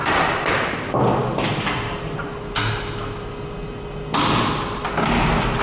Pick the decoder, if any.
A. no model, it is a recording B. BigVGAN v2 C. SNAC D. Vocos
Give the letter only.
A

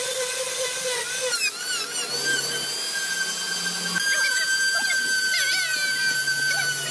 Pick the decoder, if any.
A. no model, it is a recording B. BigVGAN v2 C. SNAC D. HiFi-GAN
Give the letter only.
A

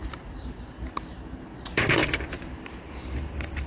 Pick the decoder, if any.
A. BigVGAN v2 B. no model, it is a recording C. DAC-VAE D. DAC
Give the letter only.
A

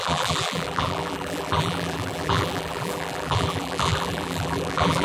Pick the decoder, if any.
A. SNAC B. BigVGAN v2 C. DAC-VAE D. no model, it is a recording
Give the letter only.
B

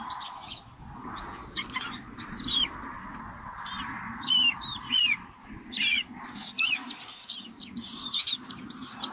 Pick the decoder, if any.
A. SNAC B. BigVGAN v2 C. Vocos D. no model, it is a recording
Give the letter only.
D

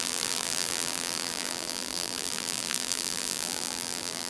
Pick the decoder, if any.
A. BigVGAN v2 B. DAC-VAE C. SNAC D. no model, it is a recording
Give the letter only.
A